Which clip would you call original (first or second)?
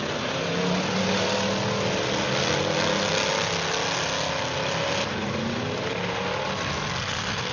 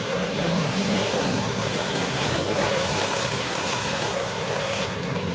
first